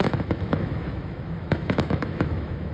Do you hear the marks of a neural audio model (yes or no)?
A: yes